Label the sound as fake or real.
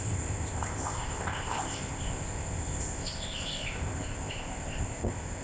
fake